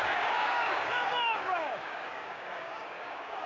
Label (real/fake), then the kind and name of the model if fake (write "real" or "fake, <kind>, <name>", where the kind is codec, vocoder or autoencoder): fake, codec, DAC